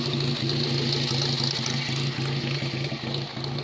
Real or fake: real